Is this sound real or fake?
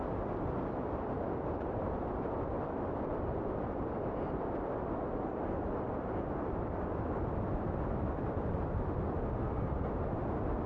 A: real